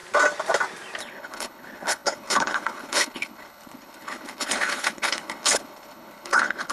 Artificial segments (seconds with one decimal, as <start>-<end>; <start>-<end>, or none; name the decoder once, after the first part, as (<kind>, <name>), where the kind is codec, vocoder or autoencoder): 1.0-6.7 (codec, HILCodec)